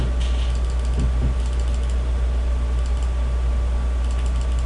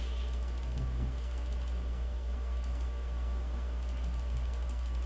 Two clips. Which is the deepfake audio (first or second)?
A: second